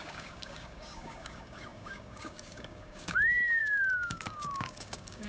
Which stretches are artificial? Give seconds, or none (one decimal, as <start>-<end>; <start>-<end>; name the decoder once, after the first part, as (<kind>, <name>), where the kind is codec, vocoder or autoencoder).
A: 0.0-5.3 (codec, DAC)

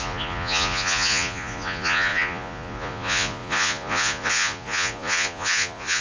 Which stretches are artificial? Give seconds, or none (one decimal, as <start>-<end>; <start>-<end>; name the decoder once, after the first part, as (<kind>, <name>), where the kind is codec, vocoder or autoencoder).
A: 0.0-6.0 (vocoder, Vocos)